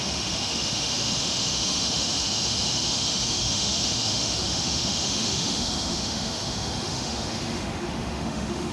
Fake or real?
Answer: fake